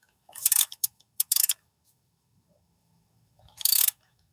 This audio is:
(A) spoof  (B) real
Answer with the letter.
A